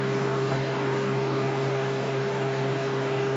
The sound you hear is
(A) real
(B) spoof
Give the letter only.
B